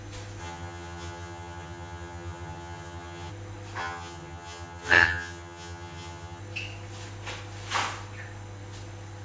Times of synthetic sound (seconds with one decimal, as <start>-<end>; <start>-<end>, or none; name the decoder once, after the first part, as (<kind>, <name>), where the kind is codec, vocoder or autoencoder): 0.4-3.3 (vocoder, HiFi-GAN); 3.8-6.4